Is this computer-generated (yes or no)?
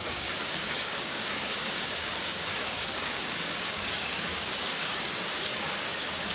yes